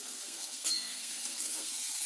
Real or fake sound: fake